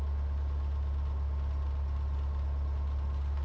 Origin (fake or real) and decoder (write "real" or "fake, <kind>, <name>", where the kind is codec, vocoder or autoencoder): real